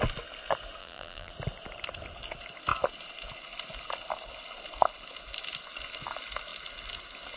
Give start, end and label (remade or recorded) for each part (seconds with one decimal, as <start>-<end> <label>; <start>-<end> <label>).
0.0-0.8 recorded; 0.8-1.3 remade; 1.3-7.4 recorded